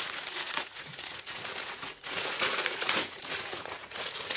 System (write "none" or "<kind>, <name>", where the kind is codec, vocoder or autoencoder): vocoder, Vocos